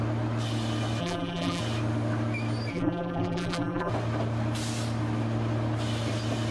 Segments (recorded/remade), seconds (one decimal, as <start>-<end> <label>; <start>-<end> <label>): 0.0-1.0 recorded; 1.0-1.6 remade; 1.6-2.7 recorded; 2.7-3.9 remade; 3.9-6.5 recorded

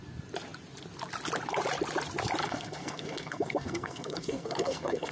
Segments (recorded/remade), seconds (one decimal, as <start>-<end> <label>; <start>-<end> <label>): 0.0-2.4 recorded; 2.4-5.1 remade

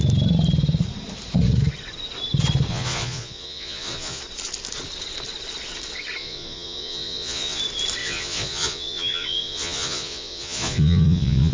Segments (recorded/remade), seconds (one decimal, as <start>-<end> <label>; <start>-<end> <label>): 0.0-2.7 recorded; 2.7-4.2 remade; 4.2-6.2 recorded; 6.2-7.6 remade; 7.6-8.0 recorded; 8.0-11.5 remade

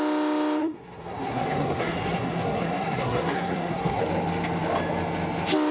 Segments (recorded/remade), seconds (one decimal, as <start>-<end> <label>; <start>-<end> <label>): 0.0-0.6 recorded; 0.6-4.0 remade; 4.0-5.7 recorded

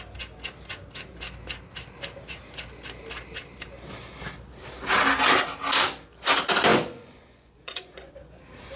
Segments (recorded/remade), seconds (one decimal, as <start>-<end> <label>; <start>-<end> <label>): 0.0-6.7 recorded; 6.7-8.4 remade; 8.4-8.8 recorded

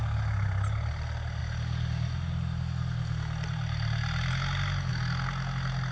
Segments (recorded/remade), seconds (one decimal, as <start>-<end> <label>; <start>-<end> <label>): 0.0-5.9 recorded

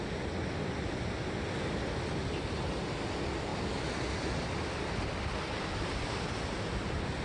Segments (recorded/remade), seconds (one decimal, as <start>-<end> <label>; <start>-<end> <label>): 0.0-7.2 recorded

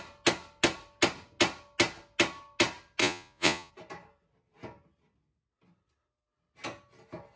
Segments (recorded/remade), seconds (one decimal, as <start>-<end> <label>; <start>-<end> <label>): 0.0-3.0 recorded; 3.0-3.7 remade; 3.7-7.4 recorded